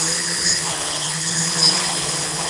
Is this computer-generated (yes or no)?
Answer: yes